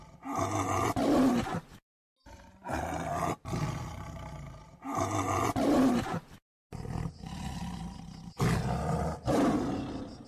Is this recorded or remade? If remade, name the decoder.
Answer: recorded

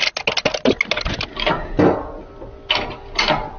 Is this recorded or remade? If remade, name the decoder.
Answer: recorded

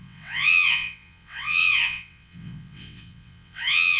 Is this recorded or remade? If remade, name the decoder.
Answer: remade, vocoder, WaveNeXt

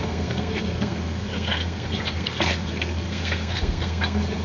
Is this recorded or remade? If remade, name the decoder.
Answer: remade, codec, SNAC